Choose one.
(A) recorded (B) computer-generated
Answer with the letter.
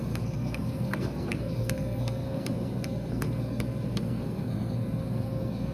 B